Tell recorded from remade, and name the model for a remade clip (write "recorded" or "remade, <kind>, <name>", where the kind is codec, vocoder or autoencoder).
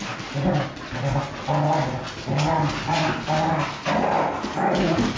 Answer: recorded